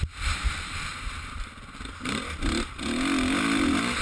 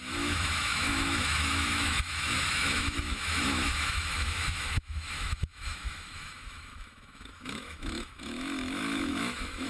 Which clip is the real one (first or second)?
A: first